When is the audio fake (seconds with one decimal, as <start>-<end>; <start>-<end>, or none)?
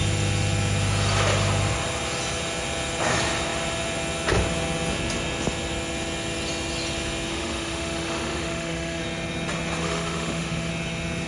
7.3-9.0; 9.8-10.7